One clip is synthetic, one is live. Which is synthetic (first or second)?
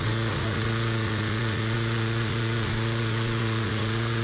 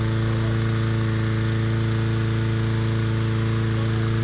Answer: first